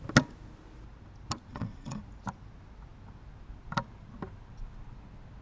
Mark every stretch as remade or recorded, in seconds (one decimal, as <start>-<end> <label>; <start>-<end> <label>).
0.0-1.5 recorded; 1.5-2.0 remade; 2.0-5.4 recorded